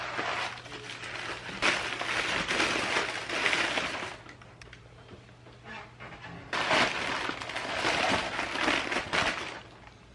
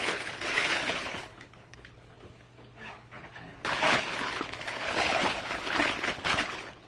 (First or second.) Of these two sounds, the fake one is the second